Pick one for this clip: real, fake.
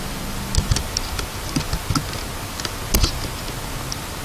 real